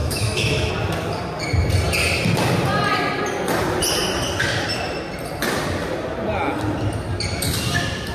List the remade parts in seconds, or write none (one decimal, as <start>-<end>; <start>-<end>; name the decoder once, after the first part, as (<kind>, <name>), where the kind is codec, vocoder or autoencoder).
0.0-0.7 (autoencoder, DAC-VAE)